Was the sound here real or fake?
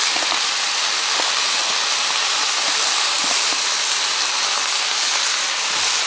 real